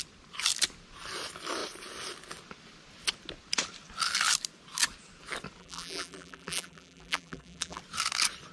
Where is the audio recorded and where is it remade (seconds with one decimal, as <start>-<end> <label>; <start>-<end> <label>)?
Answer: 0.0-5.6 recorded; 5.6-7.8 remade; 7.8-8.5 recorded